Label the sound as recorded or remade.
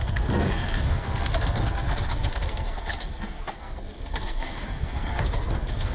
remade